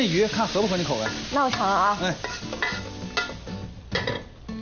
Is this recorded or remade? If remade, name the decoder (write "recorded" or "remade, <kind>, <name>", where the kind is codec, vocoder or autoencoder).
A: recorded